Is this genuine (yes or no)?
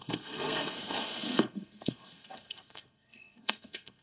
no